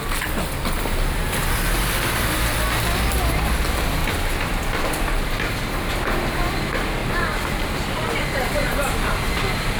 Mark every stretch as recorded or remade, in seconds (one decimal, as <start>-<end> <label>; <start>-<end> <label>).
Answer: 0.0-4.0 recorded; 4.0-5.9 remade; 5.9-7.0 recorded; 7.0-7.7 remade; 7.7-9.8 recorded